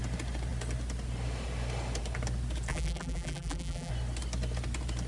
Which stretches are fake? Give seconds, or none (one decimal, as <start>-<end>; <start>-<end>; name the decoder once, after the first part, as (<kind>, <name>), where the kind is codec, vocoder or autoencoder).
2.7-3.9 (vocoder, BigVGAN v2)